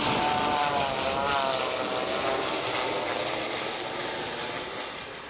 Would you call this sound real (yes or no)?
yes